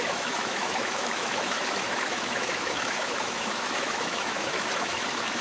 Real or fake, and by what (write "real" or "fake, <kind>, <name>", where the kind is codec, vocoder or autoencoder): fake, autoencoder, DAC-VAE